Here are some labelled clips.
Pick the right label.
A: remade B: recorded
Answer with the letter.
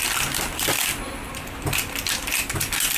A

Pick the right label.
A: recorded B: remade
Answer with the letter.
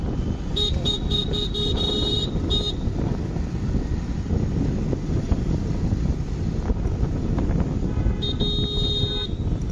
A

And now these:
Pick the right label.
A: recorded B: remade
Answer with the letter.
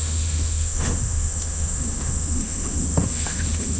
B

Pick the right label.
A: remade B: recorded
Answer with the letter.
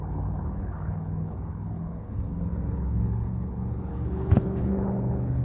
A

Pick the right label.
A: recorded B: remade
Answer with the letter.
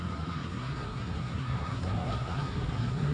B